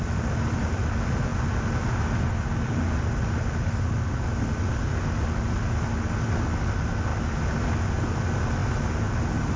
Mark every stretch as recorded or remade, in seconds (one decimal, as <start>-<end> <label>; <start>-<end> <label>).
0.0-9.6 recorded